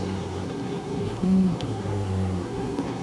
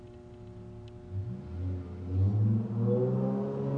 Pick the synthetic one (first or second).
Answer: first